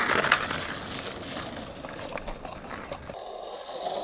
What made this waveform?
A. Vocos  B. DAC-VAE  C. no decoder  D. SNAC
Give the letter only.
C